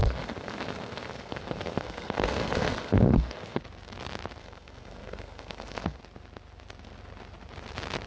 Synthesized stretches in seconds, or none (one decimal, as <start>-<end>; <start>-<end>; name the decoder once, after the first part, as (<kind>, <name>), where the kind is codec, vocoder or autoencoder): 0.0-3.6 (codec, SNAC); 4.4-6.0